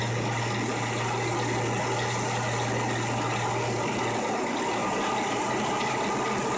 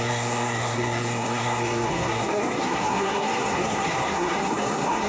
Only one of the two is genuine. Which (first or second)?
first